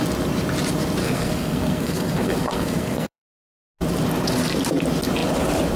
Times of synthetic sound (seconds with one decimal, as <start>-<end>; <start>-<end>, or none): 1.0-3.3